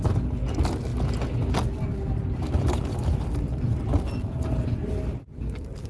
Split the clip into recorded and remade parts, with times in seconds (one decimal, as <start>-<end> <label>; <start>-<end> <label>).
0.0-5.9 recorded